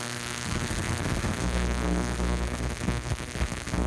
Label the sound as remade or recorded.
remade